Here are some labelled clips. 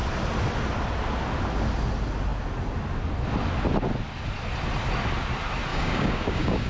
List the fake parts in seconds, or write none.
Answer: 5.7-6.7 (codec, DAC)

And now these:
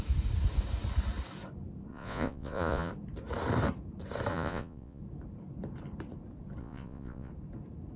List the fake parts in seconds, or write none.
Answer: 1.9-2.9 (vocoder, Vocos); 4.3-5.0; 6.6-7.3

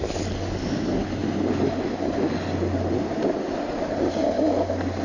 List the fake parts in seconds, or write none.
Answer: none

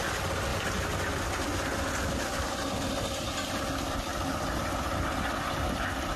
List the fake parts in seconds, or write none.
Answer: none